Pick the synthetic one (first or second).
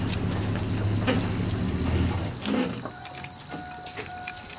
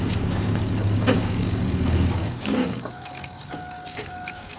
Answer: second